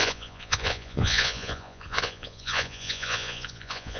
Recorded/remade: remade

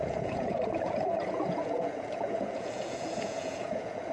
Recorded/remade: remade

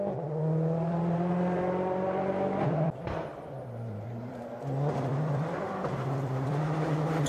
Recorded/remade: remade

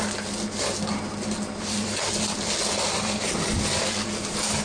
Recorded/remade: recorded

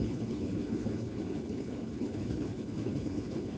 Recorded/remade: remade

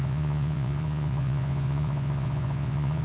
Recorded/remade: remade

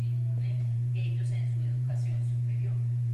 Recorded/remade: remade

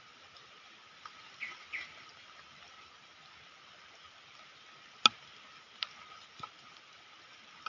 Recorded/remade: recorded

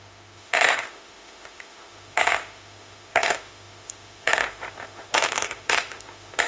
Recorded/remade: remade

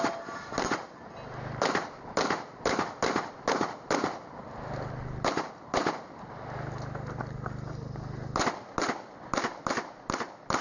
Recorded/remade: recorded